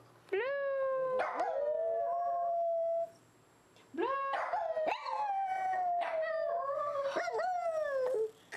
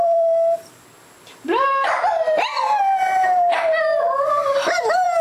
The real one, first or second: first